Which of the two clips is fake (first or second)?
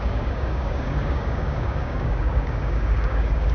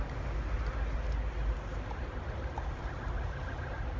first